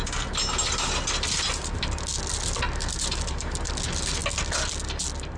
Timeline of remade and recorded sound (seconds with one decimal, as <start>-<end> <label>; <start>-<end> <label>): 0.0-5.4 recorded